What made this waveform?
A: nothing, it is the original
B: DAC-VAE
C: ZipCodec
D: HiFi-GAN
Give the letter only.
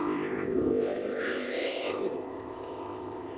C